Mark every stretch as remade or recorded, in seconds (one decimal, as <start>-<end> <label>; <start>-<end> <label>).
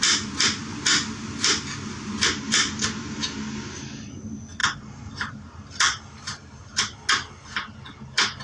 0.0-4.6 recorded; 4.6-6.8 remade; 6.8-8.4 recorded